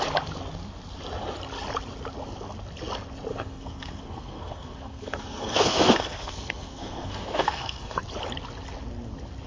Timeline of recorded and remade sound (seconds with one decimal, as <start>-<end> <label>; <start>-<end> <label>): 0.0-3.3 recorded; 3.3-8.0 remade; 8.0-9.5 recorded